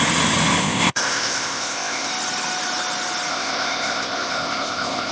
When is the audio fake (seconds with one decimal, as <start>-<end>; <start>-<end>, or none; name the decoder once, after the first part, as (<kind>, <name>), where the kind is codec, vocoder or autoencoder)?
0.6-2.1 (codec, ZipCodec); 3.3-5.1